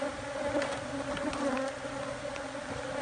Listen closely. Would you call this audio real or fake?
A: real